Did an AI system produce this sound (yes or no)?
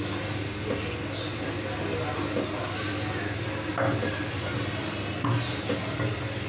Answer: no